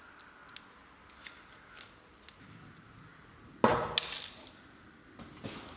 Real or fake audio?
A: real